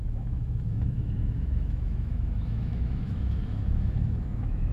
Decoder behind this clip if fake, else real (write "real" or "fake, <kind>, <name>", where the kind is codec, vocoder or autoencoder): fake, autoencoder, DAC-VAE